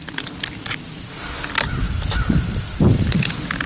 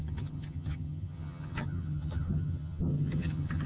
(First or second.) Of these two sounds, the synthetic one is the second